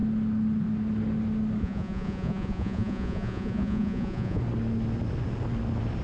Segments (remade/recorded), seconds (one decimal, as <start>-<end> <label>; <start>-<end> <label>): 0.0-1.6 recorded; 1.6-4.4 remade; 4.4-6.0 recorded